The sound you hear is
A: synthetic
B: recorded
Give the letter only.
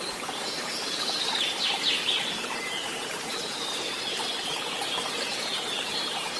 A